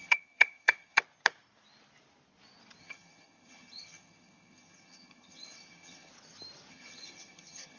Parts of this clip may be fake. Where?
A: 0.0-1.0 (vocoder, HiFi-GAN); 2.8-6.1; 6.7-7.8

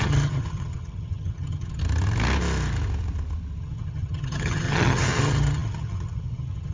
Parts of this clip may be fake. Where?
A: 0.0-1.8 (vocoder, HiFi-GAN); 3.6-6.7

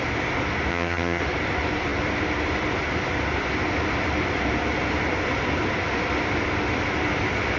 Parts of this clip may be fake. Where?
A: 0.7-1.2 (vocoder, HiFi-GAN)

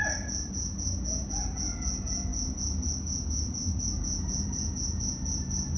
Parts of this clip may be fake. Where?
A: none

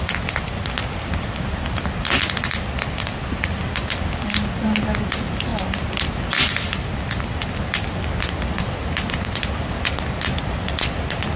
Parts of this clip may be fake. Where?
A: none

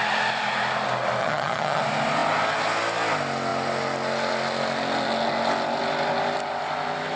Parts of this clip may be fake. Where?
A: 1.2-1.8 (vocoder, HiFi-GAN)

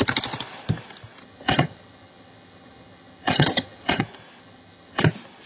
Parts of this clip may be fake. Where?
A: 1.2-4.0 (vocoder, HiFi-GAN); 4.4-5.0